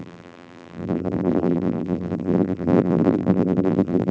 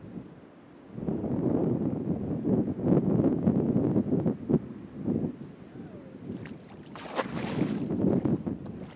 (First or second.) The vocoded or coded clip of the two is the first